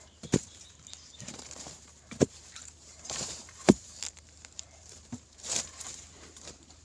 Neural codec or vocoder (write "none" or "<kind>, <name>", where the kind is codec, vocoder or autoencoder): vocoder, BigVGAN v2